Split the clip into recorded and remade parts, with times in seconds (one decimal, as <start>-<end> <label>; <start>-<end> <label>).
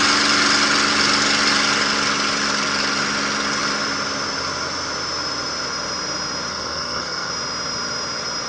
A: 0.0-6.5 recorded; 6.5-7.3 remade; 7.3-8.5 recorded